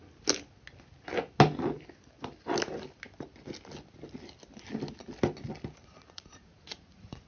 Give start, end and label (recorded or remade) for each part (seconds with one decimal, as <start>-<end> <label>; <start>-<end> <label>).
0.0-5.8 recorded; 5.8-7.3 remade